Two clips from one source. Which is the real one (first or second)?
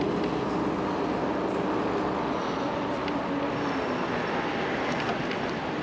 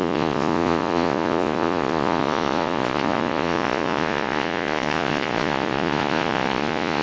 first